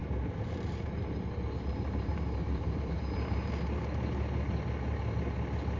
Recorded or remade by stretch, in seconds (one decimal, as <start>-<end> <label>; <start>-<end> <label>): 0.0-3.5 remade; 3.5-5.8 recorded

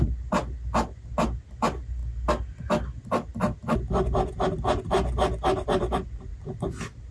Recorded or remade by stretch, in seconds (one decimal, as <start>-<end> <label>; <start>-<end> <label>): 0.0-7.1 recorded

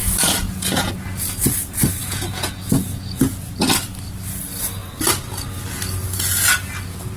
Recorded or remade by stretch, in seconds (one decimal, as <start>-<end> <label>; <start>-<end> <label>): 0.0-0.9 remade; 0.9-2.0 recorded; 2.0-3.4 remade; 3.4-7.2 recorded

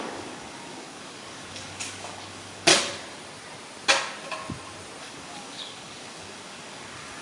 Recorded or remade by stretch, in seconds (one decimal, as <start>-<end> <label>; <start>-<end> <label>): 0.0-2.7 remade; 2.7-5.0 recorded; 5.0-7.2 remade

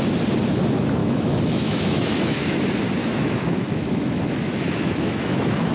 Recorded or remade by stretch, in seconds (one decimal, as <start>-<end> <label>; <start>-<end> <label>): 0.0-1.0 recorded; 1.0-2.6 remade; 2.6-3.0 recorded; 3.0-5.7 remade

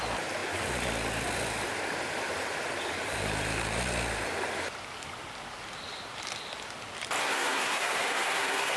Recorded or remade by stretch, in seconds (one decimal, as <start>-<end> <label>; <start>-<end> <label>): 0.0-7.2 recorded; 7.2-8.8 remade

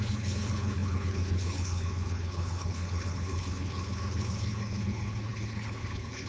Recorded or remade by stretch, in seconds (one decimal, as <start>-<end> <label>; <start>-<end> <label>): 0.0-6.3 remade